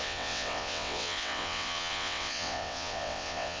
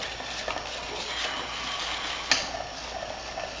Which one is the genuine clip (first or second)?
second